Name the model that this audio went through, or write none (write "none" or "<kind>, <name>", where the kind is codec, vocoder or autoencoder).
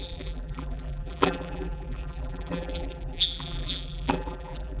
vocoder, BigVGAN v2